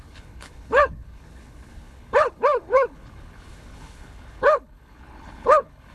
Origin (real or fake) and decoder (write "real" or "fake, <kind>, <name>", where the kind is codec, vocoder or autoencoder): fake, codec, HILCodec